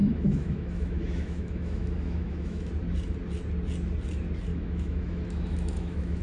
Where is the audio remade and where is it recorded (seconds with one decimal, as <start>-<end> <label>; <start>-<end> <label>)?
0.0-2.7 remade; 2.7-4.5 recorded; 4.5-6.2 remade

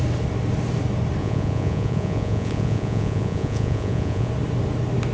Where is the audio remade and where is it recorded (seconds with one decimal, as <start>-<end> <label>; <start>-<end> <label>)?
0.0-1.2 recorded; 1.2-4.3 remade; 4.3-5.1 recorded

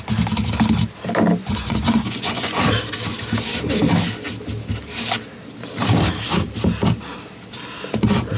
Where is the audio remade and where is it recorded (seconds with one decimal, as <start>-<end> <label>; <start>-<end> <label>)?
0.0-1.4 recorded; 1.4-2.6 remade; 2.6-8.4 recorded

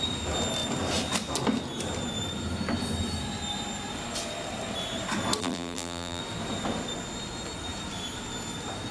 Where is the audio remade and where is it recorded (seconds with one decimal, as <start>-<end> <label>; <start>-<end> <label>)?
0.0-5.4 recorded; 5.4-6.2 remade; 6.2-8.9 recorded

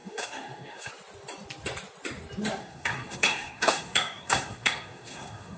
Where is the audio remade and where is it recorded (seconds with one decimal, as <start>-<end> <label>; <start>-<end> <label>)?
0.0-0.9 remade; 0.9-2.6 recorded; 2.6-5.6 remade

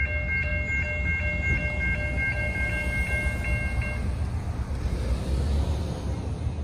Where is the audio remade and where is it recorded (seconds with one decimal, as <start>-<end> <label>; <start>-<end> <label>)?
0.0-6.6 recorded